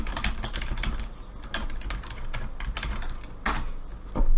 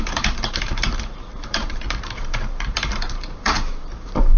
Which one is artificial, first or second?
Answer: second